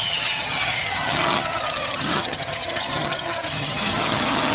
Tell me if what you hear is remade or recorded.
remade